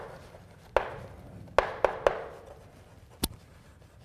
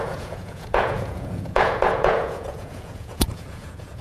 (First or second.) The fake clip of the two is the second